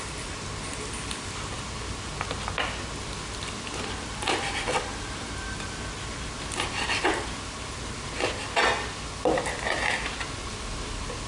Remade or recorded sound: recorded